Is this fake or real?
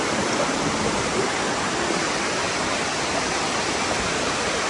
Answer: fake